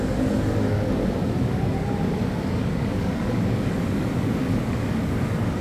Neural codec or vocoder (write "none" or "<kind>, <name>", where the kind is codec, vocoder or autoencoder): codec, DAC